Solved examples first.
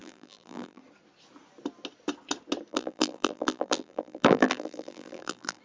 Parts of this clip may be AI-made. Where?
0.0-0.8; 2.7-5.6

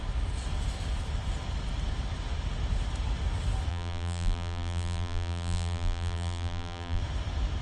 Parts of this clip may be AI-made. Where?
3.7-7.0

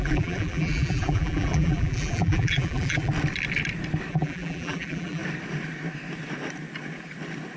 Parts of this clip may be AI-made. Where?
0.0-3.1; 4.1-5.2